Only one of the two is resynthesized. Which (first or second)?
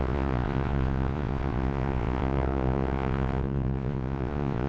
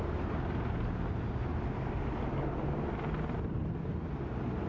first